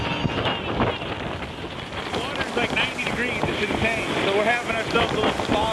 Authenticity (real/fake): real